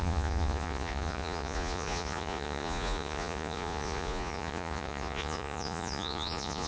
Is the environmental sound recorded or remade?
remade